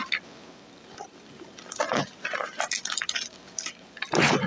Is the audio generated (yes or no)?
no